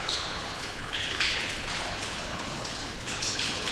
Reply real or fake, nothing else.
fake